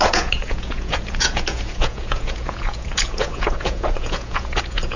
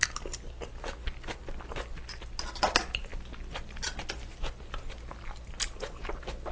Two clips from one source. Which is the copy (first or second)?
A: first